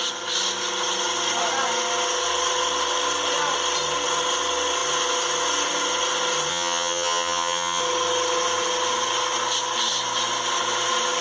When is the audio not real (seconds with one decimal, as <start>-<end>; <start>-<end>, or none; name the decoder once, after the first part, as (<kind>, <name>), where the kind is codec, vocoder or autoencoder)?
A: 6.5-7.8 (vocoder, HiFi-GAN)